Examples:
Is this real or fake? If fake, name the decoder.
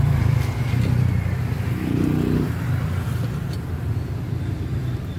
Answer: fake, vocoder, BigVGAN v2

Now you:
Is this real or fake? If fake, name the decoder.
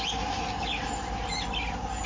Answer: real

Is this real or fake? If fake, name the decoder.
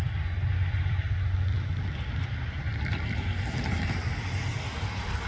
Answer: real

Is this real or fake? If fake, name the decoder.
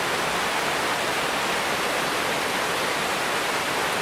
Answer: real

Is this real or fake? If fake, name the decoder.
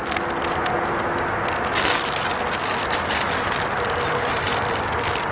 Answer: real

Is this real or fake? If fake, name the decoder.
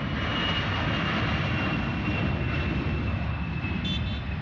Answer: real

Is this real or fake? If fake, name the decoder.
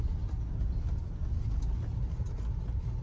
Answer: real